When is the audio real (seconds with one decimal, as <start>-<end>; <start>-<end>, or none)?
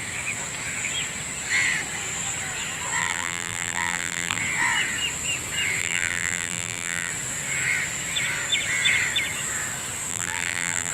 0.0-3.0; 4.4-5.8; 7.1-10.1